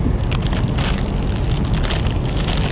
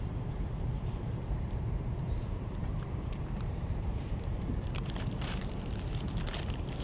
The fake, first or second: second